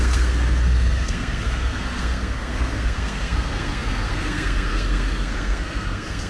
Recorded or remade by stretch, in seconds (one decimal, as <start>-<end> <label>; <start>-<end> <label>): 0.0-6.3 remade